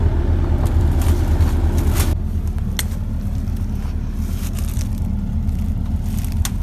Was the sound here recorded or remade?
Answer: recorded